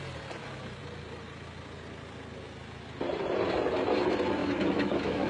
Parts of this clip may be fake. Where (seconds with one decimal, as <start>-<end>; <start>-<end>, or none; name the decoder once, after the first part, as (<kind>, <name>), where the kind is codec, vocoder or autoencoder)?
4.4-5.3 (autoencoder, DAC-VAE)

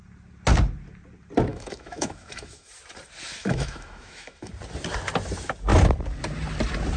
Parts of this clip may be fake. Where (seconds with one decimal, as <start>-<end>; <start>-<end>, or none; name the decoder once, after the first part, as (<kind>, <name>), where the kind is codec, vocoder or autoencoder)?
1.5-2.7 (autoencoder, DAC-VAE); 3.4-4.5

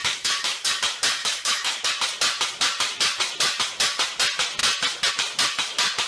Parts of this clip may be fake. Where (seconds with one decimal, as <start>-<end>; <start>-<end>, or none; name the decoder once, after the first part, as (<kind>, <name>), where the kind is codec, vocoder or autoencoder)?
0.0-0.7 (autoencoder, DAC-VAE); 1.2-1.9

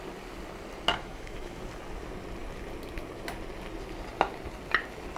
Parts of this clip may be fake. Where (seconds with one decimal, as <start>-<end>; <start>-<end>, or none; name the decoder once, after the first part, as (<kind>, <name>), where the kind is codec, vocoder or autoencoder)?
0.9-1.6 (autoencoder, DAC-VAE)

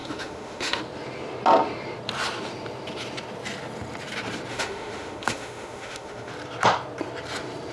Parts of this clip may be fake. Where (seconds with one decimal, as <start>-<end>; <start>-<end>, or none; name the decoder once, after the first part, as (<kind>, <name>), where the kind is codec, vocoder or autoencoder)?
0.0-0.8 (autoencoder, DAC-VAE); 4.5-6.3

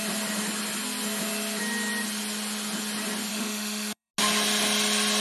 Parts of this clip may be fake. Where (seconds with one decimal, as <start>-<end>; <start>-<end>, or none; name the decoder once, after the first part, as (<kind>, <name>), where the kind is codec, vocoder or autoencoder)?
3.3-4.1 (autoencoder, DAC-VAE)

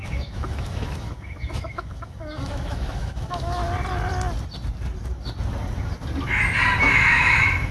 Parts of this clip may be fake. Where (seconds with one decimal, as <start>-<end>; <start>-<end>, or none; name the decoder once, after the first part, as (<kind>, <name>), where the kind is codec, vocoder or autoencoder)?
0.0-3.6 (autoencoder, DAC-VAE); 6.8-7.7

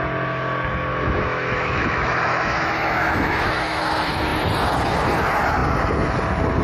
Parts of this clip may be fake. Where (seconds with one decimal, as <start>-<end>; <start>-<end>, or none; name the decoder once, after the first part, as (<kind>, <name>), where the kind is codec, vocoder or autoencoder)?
0.9-3.8 (autoencoder, DAC-VAE)